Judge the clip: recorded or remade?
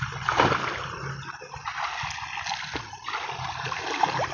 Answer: recorded